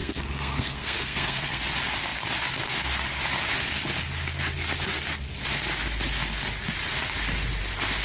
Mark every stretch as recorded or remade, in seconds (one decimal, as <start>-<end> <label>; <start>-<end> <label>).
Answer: 0.0-1.6 remade; 1.6-8.0 recorded